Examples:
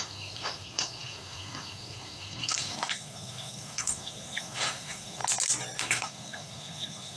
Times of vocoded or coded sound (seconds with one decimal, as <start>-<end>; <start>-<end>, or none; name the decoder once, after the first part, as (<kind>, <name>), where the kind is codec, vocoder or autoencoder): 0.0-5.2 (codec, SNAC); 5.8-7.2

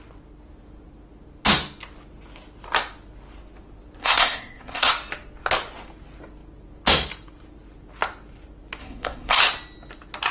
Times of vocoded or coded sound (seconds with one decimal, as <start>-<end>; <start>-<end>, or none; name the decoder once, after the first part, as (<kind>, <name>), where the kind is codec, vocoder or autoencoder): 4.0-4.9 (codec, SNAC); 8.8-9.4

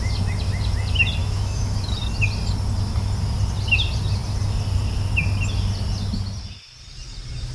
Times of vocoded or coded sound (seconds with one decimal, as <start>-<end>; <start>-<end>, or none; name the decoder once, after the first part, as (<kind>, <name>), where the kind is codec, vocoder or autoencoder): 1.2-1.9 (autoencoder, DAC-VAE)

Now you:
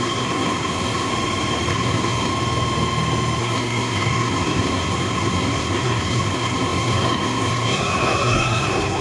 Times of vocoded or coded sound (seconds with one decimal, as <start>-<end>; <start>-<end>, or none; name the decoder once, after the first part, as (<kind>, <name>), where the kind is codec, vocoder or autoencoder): 0.0-1.1 (codec, SNAC); 1.7-2.3; 3.4-9.0